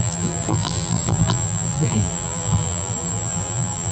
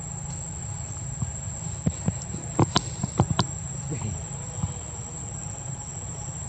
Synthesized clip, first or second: first